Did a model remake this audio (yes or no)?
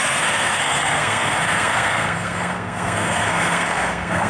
yes